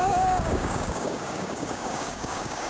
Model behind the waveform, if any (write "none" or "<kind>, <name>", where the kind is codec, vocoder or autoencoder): codec, DAC